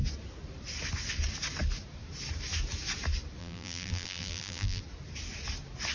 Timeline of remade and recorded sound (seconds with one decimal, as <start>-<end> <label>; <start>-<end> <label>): 0.0-3.4 recorded; 3.4-4.8 remade; 4.8-5.9 recorded